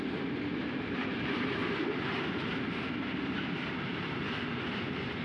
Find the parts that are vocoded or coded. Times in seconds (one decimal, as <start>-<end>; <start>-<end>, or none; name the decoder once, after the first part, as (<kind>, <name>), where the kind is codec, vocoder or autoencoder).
0.0-1.6 (vocoder, BigVGAN v2); 4.7-5.2